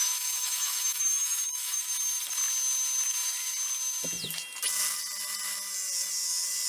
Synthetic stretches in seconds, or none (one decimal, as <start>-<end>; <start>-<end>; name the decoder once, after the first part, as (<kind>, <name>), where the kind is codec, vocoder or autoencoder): 0.0-1.8 (autoencoder, DAC-VAE)